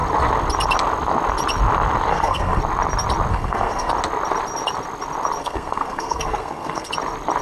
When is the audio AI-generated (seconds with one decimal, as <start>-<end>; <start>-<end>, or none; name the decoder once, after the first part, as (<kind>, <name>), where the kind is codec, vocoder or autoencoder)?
2.1-2.6 (codec, SNAC); 3.3-3.9; 5.4-6.9